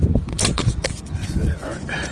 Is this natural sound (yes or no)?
no